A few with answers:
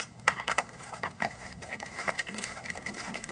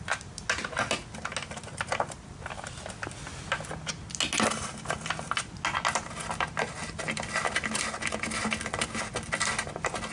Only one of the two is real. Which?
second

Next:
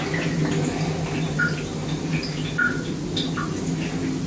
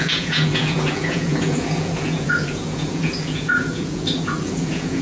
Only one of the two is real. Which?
first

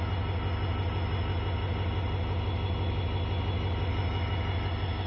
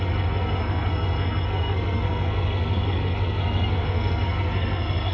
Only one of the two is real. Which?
first